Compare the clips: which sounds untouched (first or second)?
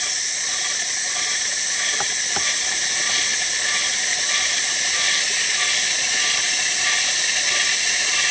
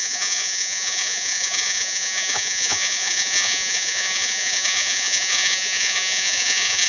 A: first